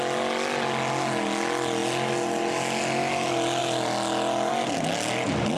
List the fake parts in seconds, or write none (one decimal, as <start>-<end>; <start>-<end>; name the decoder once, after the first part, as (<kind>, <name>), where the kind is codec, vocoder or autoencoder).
none